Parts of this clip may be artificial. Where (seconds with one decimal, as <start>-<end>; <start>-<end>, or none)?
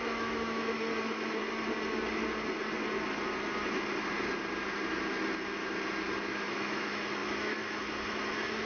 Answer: 0.0-1.4; 6.3-8.7